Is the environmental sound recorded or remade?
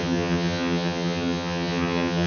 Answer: remade